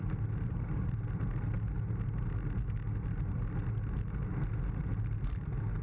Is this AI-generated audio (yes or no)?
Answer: no